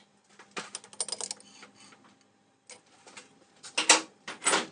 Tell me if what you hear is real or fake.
real